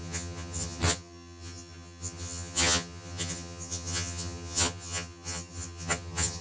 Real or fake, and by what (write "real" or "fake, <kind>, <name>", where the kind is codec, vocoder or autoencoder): fake, vocoder, HiFi-GAN